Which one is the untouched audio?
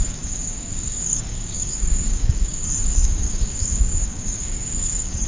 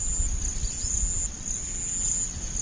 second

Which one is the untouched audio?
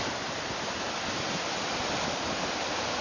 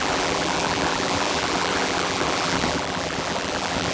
first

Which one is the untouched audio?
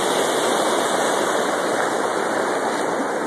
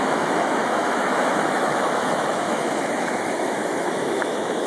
first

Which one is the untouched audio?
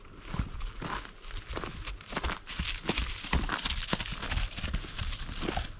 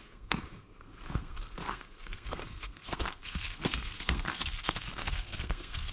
first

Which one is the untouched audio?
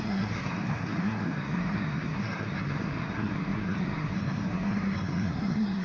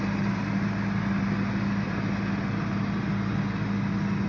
second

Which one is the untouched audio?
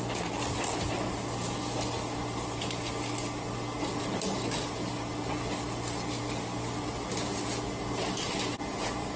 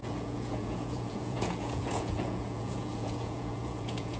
first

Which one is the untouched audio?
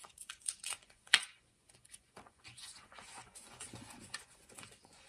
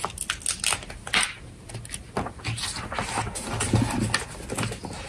second